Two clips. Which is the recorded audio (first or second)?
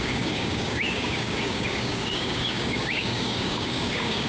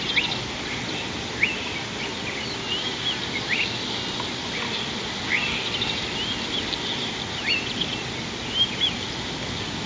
second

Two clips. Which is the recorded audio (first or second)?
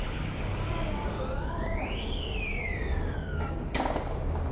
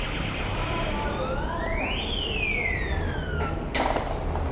second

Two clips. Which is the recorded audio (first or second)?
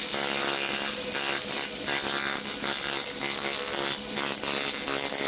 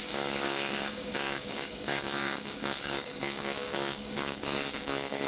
first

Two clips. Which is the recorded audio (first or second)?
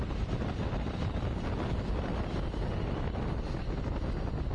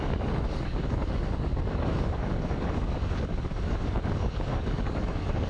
first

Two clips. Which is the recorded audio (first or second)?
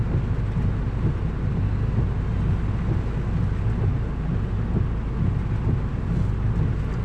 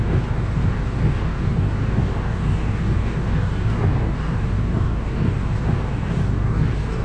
first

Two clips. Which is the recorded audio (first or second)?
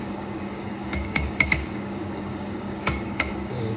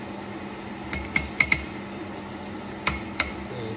second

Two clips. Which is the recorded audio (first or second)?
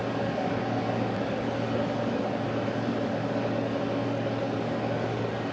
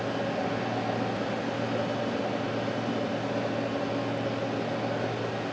second